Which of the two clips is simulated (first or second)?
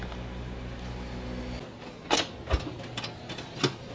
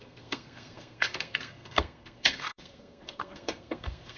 second